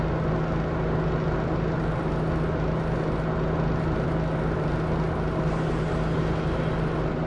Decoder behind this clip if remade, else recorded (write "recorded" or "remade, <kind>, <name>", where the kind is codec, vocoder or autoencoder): recorded